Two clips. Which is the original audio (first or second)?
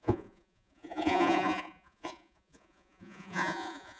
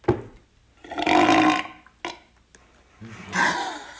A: second